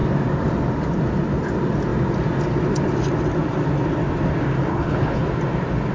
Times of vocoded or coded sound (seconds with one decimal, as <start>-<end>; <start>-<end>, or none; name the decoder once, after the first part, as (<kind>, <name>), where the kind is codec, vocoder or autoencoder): 4.7-5.2 (codec, HILCodec)